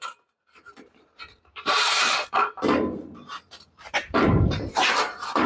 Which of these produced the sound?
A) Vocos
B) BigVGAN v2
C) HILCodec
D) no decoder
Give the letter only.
B